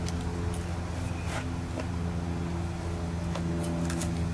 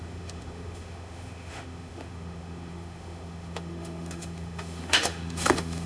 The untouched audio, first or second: first